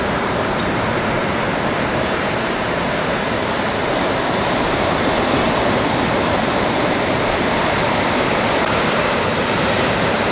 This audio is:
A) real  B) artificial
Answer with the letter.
B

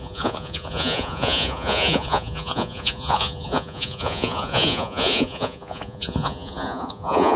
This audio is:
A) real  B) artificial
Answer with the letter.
B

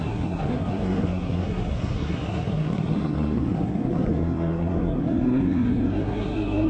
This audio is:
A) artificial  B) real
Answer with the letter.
A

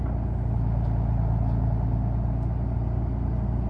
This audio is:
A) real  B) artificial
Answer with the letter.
A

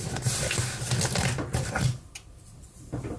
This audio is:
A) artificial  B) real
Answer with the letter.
B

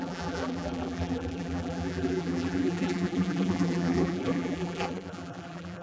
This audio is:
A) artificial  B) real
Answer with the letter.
A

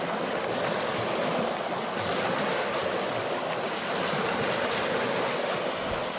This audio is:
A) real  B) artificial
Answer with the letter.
A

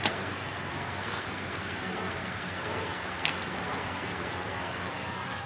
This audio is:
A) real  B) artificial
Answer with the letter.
B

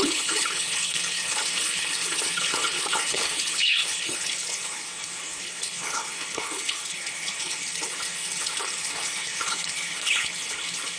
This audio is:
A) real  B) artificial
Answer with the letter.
B